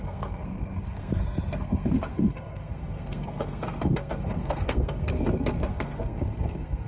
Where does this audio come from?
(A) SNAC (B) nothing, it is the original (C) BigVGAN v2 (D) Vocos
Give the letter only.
A